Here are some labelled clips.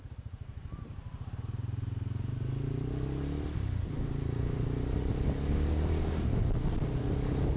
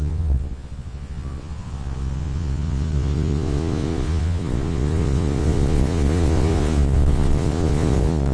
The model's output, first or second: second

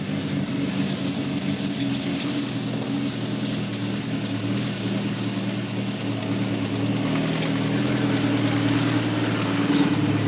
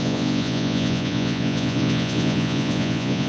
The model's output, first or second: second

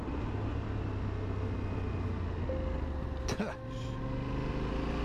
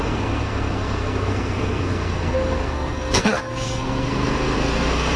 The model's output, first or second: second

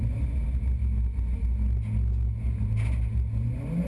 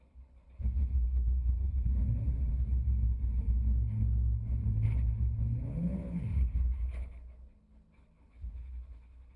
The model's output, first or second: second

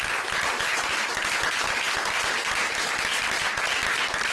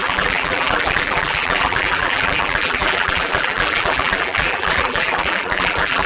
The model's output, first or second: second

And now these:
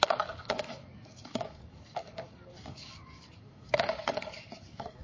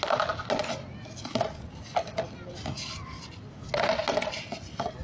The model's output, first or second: first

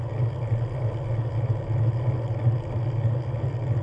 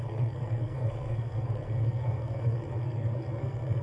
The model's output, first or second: second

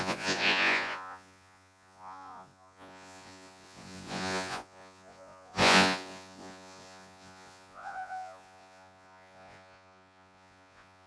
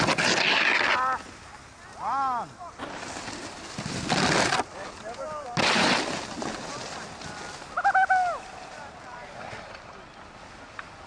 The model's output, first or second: first